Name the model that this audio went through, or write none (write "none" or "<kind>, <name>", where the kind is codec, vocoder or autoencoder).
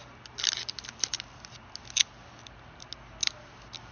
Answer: none